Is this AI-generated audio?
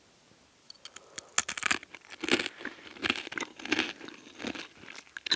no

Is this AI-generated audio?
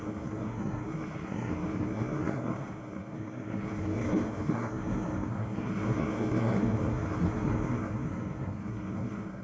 yes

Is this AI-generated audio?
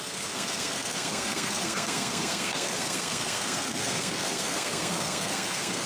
yes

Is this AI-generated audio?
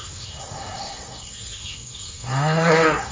yes